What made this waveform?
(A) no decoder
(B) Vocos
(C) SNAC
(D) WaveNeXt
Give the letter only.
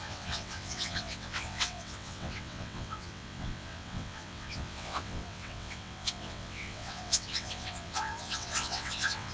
D